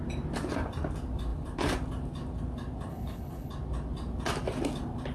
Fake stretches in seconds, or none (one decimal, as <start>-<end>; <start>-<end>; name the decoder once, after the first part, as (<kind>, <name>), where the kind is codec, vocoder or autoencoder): 2.9-3.5 (codec, HILCodec)